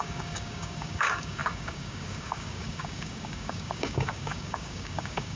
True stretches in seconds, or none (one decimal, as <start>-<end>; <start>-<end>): none